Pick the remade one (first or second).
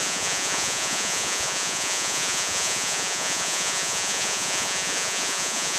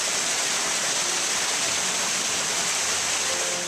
first